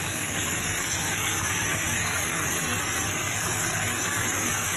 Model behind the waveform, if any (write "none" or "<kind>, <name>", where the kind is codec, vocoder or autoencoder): codec, SNAC